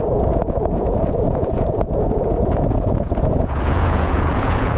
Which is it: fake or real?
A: fake